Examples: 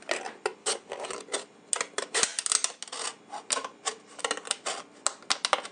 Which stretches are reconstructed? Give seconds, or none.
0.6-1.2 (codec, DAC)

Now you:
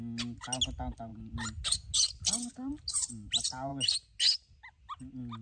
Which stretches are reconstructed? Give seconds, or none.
none

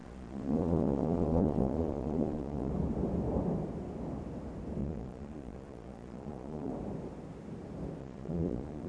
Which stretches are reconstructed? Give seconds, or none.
0.0-2.7 (vocoder, Vocos); 4.8-6.7; 8.0-8.9